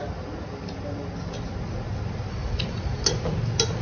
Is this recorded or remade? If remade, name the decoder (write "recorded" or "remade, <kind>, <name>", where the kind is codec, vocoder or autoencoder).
recorded